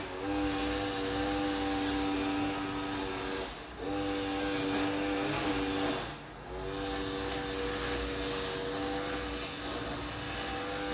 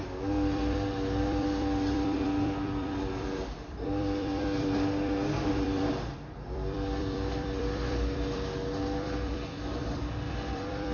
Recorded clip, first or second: first